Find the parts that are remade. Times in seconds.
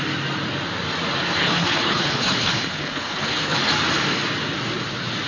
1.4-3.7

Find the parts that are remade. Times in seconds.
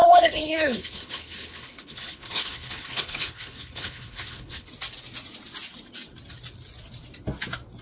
0.0-4.7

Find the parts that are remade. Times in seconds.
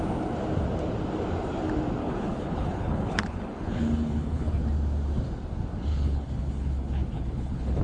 2.0-4.6; 5.9-7.8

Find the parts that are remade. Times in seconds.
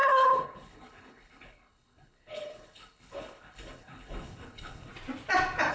0.0-4.9